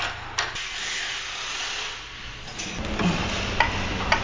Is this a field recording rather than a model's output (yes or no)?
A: yes